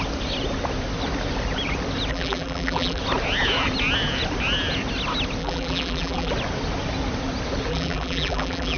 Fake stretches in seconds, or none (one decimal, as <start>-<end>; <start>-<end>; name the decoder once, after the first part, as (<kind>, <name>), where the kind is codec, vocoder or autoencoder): 2.1-3.0 (vocoder, BigVGAN v2); 5.4-6.3; 7.7-8.8